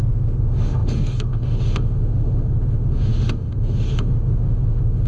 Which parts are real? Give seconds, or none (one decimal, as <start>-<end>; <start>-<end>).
none